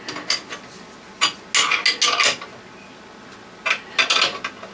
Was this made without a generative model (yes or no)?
yes